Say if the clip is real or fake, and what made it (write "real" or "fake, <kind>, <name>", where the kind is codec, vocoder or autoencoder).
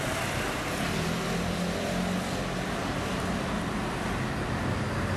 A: real